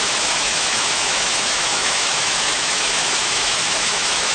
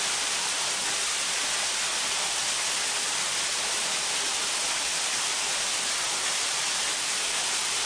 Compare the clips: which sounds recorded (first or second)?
second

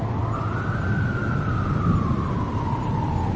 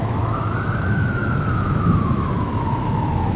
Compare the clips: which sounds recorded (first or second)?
first